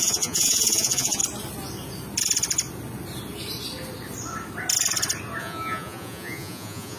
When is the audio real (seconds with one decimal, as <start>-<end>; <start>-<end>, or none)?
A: 1.2-5.4